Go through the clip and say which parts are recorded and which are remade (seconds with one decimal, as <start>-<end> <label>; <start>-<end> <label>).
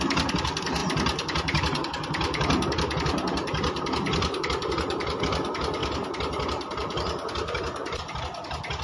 0.0-0.8 recorded; 0.8-5.2 remade; 5.2-5.8 recorded; 5.8-8.2 remade; 8.2-8.8 recorded